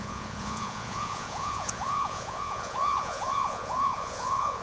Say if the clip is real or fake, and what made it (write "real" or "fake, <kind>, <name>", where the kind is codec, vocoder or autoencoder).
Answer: fake, vocoder, Vocos